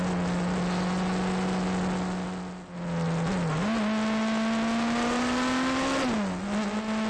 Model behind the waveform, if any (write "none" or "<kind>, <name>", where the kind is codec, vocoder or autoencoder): none